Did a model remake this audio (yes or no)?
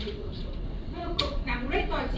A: yes